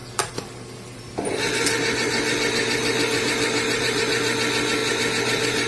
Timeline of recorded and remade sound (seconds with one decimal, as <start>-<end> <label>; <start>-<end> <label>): 0.0-1.0 remade; 1.0-2.8 recorded; 2.8-4.0 remade; 4.0-4.8 recorded; 4.8-5.7 remade